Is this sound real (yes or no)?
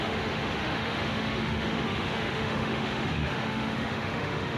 no